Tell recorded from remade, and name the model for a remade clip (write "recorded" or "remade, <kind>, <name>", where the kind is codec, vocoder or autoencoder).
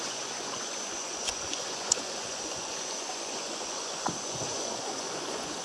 remade, vocoder, Vocos